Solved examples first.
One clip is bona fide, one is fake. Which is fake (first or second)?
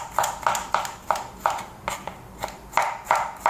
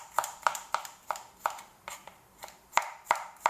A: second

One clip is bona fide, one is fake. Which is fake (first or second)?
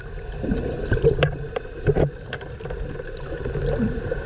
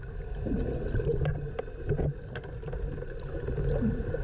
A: first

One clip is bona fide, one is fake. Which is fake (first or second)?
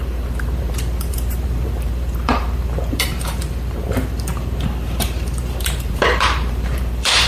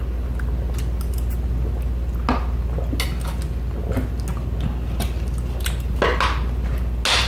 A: first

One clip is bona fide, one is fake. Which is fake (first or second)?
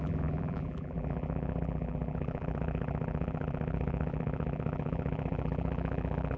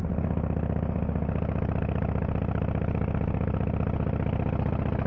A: first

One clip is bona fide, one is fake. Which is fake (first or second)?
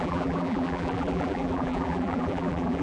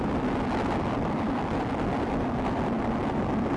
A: first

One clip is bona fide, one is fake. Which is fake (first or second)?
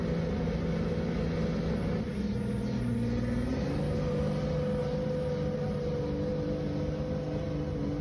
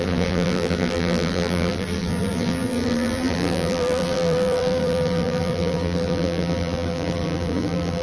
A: second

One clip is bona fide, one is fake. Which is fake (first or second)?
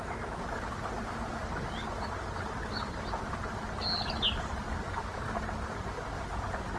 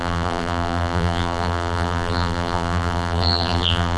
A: second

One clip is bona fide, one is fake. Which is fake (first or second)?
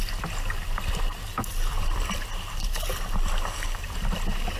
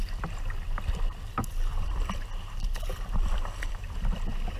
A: second